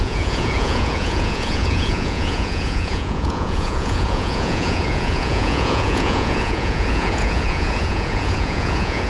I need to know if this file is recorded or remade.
remade